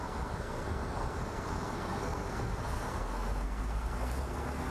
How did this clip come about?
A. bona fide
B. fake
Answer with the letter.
B